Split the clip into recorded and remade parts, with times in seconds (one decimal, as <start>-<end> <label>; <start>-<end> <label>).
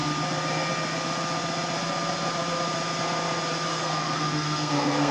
0.0-3.7 recorded; 3.7-5.1 remade